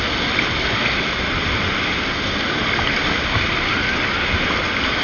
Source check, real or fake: real